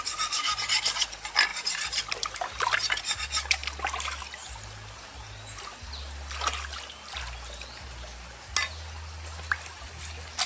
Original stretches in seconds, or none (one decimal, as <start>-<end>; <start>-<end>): 0.0-10.5